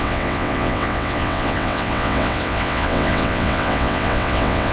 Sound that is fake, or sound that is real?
fake